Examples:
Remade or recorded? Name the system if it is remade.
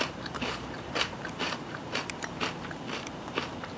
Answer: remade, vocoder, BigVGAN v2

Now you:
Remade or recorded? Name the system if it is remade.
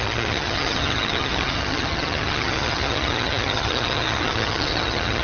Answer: remade, vocoder, HiFi-GAN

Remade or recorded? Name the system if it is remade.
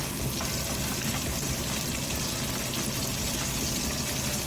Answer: recorded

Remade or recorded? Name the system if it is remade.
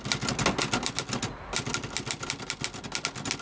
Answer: recorded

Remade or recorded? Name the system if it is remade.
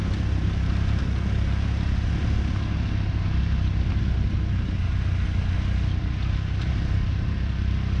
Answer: recorded